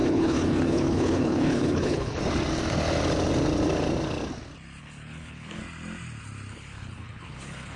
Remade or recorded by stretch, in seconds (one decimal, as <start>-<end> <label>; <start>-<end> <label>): 0.0-2.2 remade; 2.2-4.8 recorded; 4.8-5.6 remade; 5.6-6.5 recorded; 6.5-7.8 remade